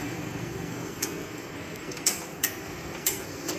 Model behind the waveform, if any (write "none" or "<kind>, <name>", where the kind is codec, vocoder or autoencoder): codec, SNAC